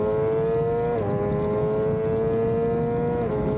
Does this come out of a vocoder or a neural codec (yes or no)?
no